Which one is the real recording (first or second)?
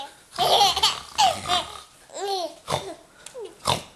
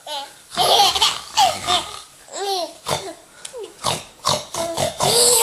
first